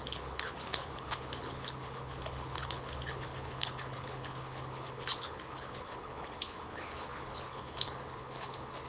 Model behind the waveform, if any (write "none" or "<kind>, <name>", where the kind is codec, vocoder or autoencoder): codec, HILCodec